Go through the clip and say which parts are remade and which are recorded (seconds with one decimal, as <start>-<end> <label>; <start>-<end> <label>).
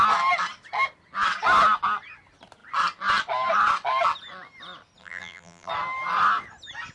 0.0-5.0 recorded; 5.0-5.7 remade; 5.7-6.9 recorded